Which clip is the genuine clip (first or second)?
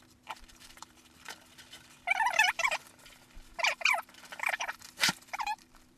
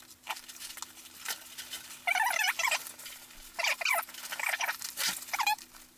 second